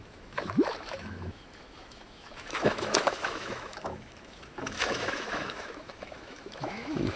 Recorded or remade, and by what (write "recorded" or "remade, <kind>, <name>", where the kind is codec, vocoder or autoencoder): remade, autoencoder, DAC-VAE